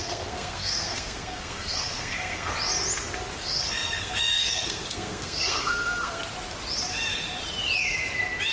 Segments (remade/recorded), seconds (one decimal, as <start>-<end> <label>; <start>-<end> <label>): 0.0-2.5 remade; 2.5-3.4 recorded; 3.4-6.2 remade; 6.2-8.5 recorded

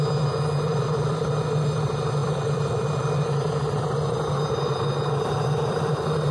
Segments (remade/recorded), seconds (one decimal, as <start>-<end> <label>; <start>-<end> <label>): 0.0-0.7 recorded; 0.7-1.3 remade; 1.3-2.2 recorded; 2.2-6.3 remade

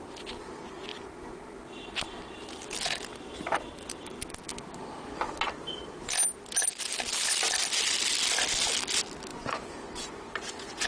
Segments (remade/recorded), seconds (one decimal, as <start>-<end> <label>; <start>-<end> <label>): 0.0-9.3 recorded; 9.3-10.9 remade

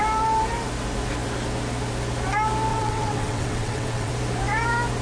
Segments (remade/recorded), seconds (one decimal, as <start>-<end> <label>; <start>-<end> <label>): 0.0-2.7 recorded; 2.7-4.1 remade; 4.1-5.0 recorded

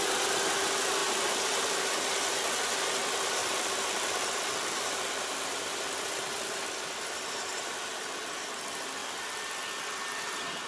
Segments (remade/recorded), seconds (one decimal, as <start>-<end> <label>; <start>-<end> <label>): 0.0-1.0 recorded; 1.0-2.1 remade; 2.1-3.4 recorded; 3.4-6.7 remade; 6.7-9.0 recorded; 9.0-9.6 remade; 9.6-10.7 recorded

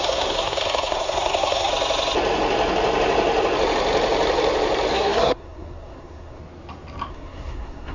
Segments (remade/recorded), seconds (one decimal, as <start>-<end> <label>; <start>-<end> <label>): 0.0-1.7 remade; 1.7-4.9 recorded; 4.9-6.4 remade; 6.4-7.1 recorded; 7.1-7.9 remade

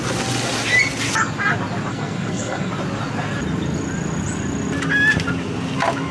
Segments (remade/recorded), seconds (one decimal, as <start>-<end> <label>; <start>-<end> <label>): 0.0-1.9 recorded; 1.9-2.7 remade; 2.7-6.1 recorded